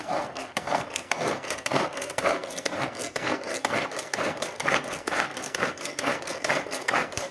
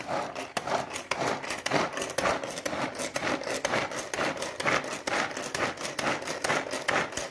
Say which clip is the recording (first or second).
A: second